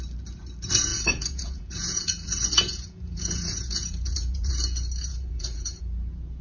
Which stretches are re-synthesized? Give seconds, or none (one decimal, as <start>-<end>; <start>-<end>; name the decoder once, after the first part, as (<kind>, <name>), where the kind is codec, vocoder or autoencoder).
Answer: 0.9-4.5 (vocoder, Vocos); 5.1-5.8